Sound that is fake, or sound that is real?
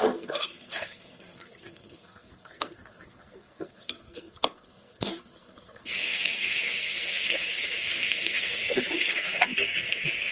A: fake